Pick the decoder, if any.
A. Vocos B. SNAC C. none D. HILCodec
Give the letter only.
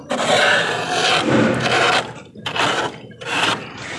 C